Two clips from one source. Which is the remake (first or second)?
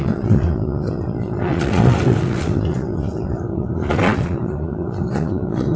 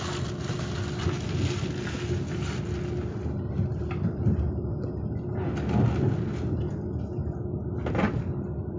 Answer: first